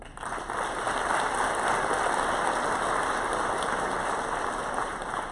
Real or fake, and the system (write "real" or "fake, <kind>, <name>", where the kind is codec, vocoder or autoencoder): real